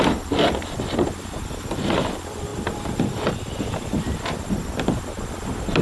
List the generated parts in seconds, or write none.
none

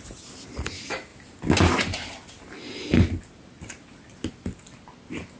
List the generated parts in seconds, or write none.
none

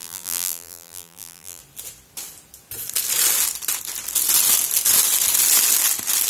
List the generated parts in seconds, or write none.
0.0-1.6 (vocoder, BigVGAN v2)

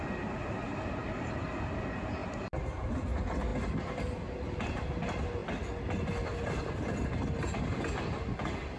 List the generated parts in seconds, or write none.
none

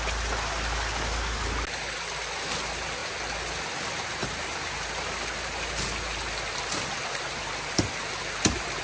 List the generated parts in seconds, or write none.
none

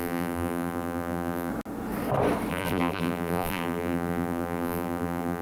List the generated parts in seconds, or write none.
0.0-1.5 (vocoder, BigVGAN v2); 2.5-5.4